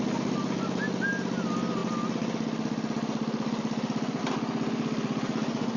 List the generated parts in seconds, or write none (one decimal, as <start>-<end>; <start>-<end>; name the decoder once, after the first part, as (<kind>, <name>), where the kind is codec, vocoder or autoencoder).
none